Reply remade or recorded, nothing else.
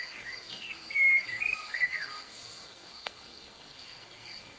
remade